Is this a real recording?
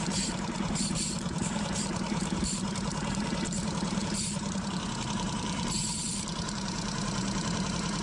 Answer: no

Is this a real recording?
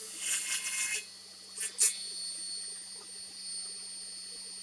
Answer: yes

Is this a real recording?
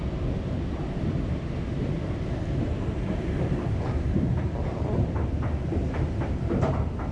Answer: no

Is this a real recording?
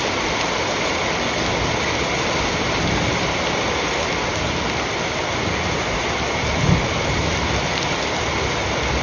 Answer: yes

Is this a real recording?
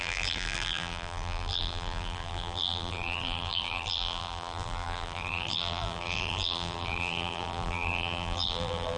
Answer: no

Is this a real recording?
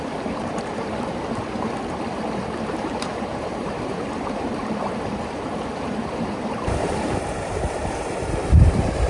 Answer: no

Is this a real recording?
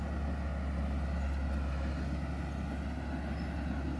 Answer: yes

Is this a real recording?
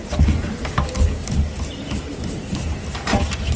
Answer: no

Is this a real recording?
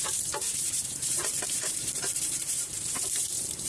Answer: no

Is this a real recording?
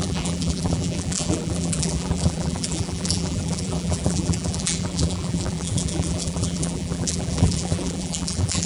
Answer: no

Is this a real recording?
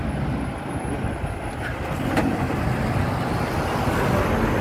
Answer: yes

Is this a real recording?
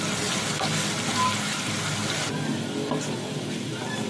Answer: yes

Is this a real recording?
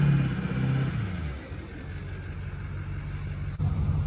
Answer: yes